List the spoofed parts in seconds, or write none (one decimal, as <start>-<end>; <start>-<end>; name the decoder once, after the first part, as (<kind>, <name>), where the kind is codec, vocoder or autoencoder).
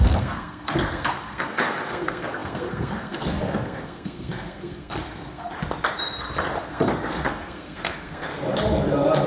0.0-5.5 (codec, SNAC); 6.6-8.3